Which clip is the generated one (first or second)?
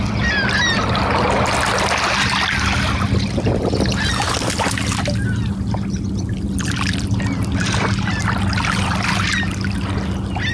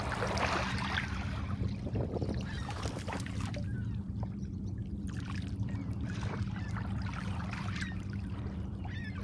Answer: second